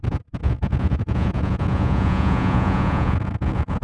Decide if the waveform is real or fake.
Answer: fake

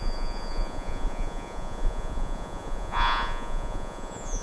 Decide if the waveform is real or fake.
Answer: fake